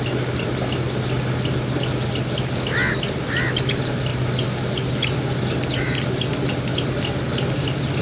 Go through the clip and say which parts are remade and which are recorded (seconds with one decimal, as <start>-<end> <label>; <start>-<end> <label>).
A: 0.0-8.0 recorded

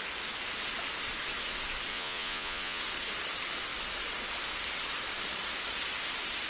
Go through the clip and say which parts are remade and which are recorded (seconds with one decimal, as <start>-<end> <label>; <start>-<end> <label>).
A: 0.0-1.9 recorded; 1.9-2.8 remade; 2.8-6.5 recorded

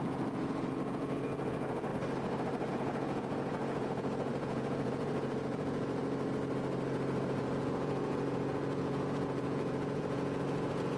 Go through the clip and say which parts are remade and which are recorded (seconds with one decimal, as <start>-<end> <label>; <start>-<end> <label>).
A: 0.0-1.9 remade; 1.9-2.7 recorded; 2.7-6.0 remade; 6.0-7.2 recorded; 7.2-11.0 remade

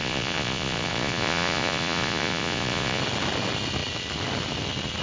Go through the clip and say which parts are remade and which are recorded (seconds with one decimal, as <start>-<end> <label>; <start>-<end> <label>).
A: 0.0-3.0 remade; 3.0-5.0 recorded

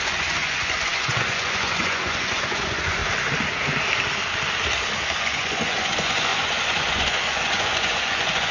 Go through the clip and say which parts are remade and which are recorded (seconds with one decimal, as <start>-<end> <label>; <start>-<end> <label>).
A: 0.0-3.0 remade; 3.0-5.2 recorded; 5.2-8.5 remade